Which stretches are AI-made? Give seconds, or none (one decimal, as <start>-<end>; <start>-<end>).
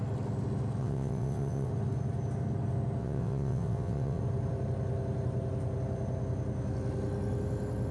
0.8-1.7; 3.0-4.2